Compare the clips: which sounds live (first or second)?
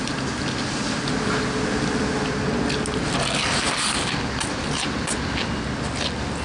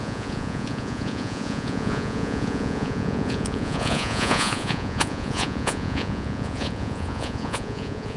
first